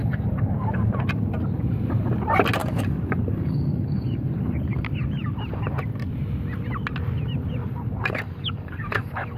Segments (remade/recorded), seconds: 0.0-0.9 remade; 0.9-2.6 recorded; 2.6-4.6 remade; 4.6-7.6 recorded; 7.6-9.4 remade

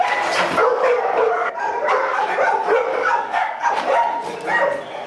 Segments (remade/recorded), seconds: 0.0-0.6 recorded; 0.6-2.2 remade; 2.2-2.9 recorded; 2.9-3.7 remade; 3.7-5.1 recorded

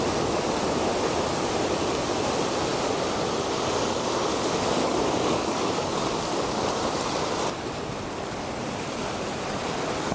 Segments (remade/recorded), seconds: 0.0-4.3 recorded; 4.3-7.0 remade; 7.0-10.1 recorded

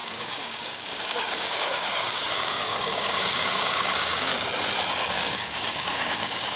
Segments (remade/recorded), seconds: 0.0-4.3 remade; 4.3-5.1 recorded; 5.1-6.6 remade

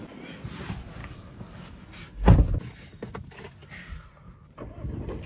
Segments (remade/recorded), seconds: 0.0-1.0 recorded; 1.0-1.8 remade; 1.8-5.3 recorded

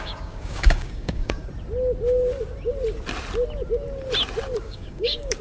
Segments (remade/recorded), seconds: 0.0-1.4 remade; 1.4-4.6 recorded; 4.6-5.4 remade

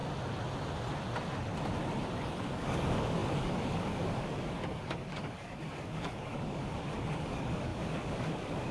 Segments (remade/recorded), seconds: 0.0-2.4 recorded; 2.4-8.7 remade